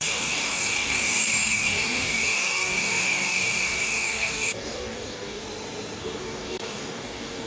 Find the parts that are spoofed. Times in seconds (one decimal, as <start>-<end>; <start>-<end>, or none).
0.0-5.4; 6.0-7.5